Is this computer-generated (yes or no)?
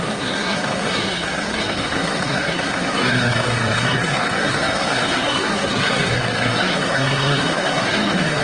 yes